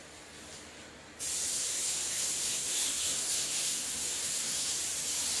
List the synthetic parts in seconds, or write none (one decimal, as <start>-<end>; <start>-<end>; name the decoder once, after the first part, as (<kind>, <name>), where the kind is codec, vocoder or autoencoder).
1.5-4.7 (codec, SNAC)